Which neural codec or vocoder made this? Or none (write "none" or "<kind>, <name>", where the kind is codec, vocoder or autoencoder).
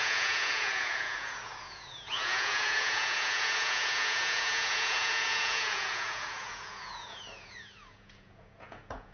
vocoder, Vocos